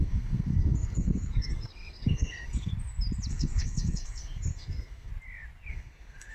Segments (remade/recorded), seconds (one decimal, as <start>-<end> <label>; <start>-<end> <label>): 0.0-2.7 remade; 2.7-3.3 recorded; 3.3-5.1 remade; 5.1-5.7 recorded; 5.7-6.3 remade